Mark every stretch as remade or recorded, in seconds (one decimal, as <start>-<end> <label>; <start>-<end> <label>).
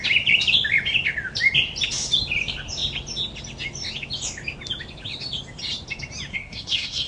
0.0-6.3 recorded; 6.3-7.1 remade